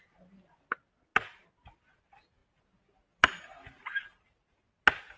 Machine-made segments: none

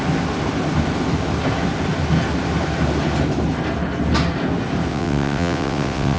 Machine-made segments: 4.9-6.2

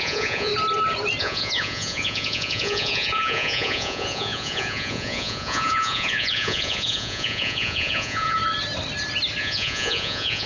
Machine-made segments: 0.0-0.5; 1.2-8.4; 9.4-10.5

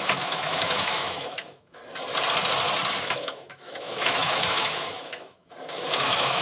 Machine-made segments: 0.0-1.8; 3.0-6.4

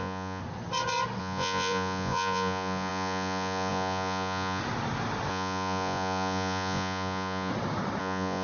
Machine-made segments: 0.0-0.4; 1.2-4.6; 5.3-7.5; 8.0-8.4

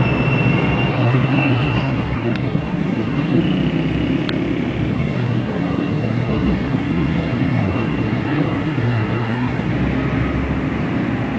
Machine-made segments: 0.9-3.4; 4.9-9.7

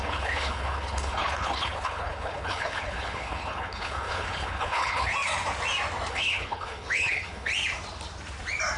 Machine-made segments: 0.0-5.1; 6.1-7.5